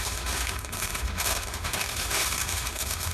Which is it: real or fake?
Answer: fake